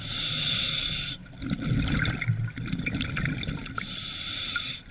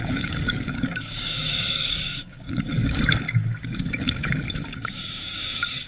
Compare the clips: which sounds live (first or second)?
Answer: first